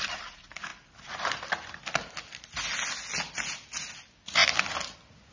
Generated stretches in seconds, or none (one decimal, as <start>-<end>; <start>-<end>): none